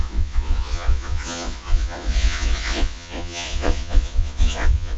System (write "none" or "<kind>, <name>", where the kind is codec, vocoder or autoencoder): vocoder, Vocos